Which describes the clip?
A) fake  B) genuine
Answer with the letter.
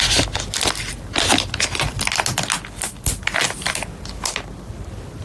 B